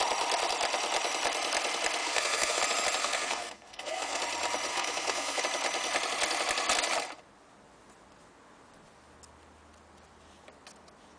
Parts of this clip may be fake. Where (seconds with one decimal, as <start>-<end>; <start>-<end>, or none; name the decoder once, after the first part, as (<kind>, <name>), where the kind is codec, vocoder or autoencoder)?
2.0-2.6 (codec, SNAC); 3.0-4.2; 4.7-5.4